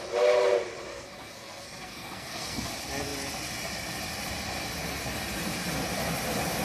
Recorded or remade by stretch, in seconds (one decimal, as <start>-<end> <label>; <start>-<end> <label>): 0.0-0.9 recorded; 0.9-2.7 remade; 2.7-6.6 recorded